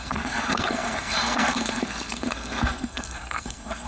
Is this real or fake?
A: fake